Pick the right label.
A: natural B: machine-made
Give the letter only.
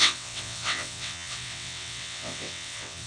B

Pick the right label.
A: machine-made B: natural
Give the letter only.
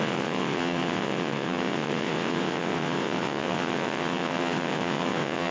A